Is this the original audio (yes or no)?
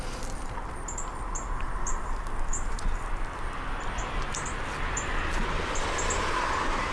yes